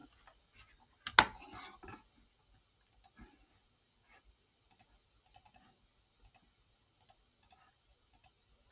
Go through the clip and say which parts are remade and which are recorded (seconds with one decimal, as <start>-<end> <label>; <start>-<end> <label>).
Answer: 0.0-8.7 recorded